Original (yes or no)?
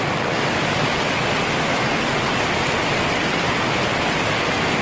yes